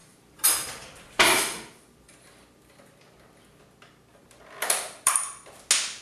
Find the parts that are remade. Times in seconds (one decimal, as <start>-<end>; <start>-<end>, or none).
0.0-3.6; 4.1-5.1